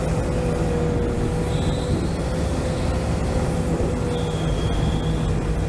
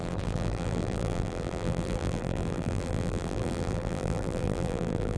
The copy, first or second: second